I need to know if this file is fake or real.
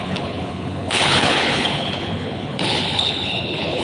fake